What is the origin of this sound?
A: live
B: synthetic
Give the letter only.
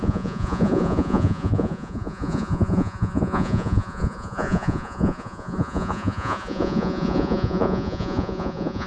B